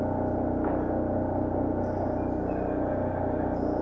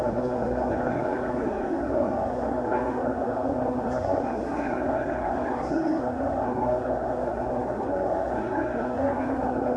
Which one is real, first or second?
first